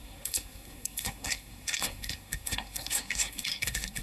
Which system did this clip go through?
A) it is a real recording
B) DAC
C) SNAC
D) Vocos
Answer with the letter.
C